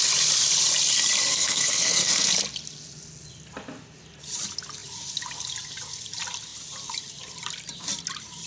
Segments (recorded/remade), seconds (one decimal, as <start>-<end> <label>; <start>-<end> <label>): 0.0-1.3 recorded; 1.3-2.3 remade; 2.3-8.5 recorded